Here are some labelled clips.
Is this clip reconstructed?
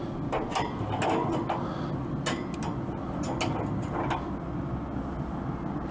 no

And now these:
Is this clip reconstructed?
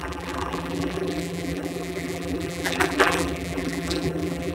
yes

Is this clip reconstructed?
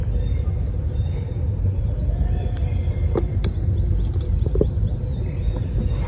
no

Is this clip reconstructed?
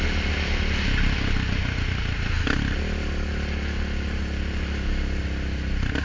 no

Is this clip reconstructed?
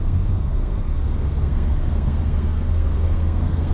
yes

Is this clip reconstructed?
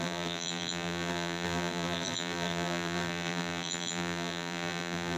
yes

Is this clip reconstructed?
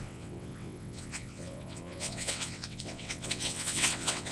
yes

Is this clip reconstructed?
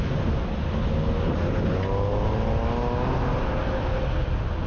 no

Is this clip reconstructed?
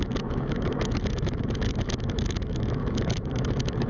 yes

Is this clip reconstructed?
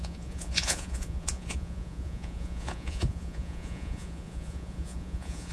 yes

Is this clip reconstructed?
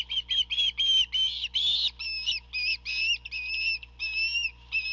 no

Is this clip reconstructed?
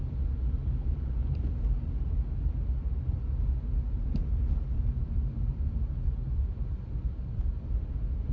no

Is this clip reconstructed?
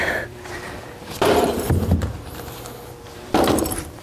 yes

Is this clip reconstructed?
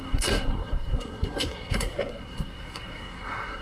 yes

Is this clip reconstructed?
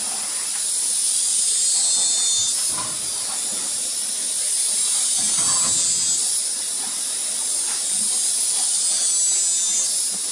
no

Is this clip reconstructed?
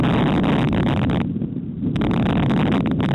no